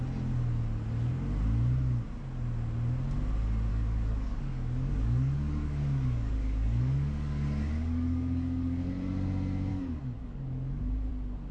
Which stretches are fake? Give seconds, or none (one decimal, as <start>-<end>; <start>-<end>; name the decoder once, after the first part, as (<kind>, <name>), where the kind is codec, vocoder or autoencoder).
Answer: 3.7-8.9 (codec, DAC); 9.7-11.1

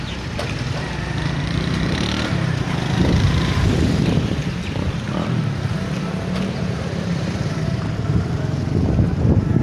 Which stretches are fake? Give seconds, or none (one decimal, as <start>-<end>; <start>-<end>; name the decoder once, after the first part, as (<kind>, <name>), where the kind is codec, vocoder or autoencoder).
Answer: 0.0-8.6 (vocoder, BigVGAN v2)

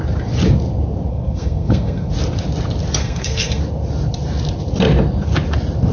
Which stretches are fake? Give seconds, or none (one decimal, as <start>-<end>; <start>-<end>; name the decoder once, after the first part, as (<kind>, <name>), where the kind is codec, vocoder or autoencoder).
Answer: 1.1-2.1 (codec, SNAC); 3.0-3.6

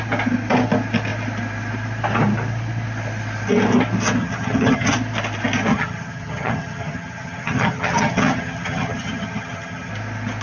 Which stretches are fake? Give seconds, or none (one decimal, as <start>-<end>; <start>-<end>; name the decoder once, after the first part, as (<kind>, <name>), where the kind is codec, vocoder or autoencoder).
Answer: 4.2-4.9 (vocoder, HiFi-GAN); 5.7-9.9

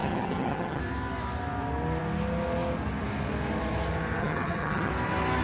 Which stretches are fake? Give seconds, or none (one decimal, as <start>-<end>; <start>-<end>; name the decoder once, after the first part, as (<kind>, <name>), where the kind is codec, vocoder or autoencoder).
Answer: 0.0-0.8 (vocoder, HiFi-GAN); 4.2-4.9